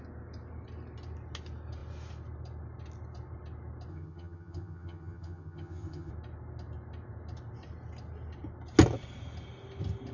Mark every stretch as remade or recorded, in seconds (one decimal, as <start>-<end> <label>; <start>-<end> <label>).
0.0-3.9 recorded; 3.9-6.1 remade; 6.1-10.1 recorded

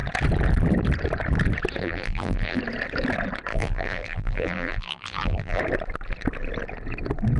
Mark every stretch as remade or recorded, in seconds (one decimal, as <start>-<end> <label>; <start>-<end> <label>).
0.0-1.8 recorded; 1.8-2.6 remade; 2.6-3.5 recorded; 3.5-5.6 remade; 5.6-7.4 recorded

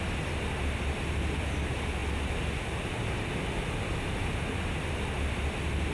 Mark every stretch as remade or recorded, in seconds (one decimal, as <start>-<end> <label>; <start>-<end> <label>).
0.0-5.9 recorded

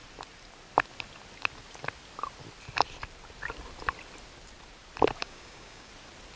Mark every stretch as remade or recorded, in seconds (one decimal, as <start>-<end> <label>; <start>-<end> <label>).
0.0-5.2 recorded; 5.2-5.9 remade; 5.9-6.4 recorded

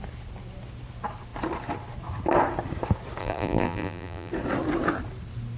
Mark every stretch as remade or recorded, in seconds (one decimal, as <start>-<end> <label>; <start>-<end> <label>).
0.0-3.2 recorded; 3.2-4.3 remade; 4.3-5.6 recorded

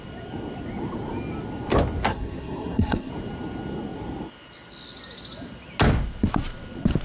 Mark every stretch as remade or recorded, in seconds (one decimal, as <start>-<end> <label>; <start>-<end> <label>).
0.0-2.1 recorded; 2.1-3.1 remade; 3.1-7.0 recorded

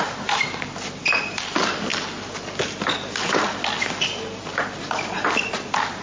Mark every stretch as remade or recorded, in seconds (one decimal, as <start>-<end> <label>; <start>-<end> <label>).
0.0-6.0 recorded

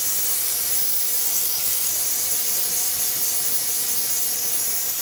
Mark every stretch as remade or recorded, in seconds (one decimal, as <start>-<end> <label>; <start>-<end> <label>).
0.0-1.2 recorded; 1.2-1.9 remade; 1.9-5.0 recorded